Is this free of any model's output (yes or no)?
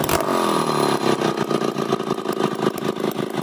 yes